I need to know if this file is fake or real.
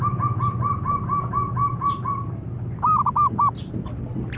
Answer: real